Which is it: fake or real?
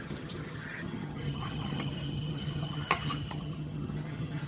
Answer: fake